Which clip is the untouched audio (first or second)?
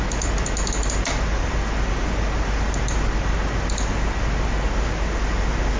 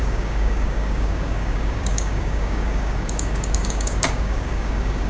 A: first